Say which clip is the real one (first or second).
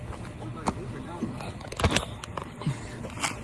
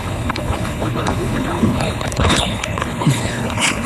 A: first